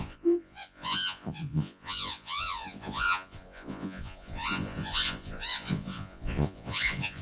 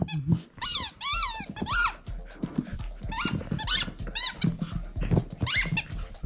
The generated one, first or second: first